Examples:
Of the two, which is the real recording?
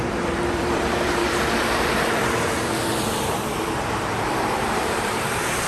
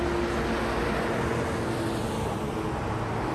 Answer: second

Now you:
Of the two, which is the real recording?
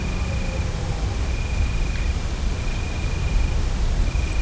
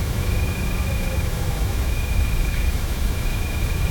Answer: first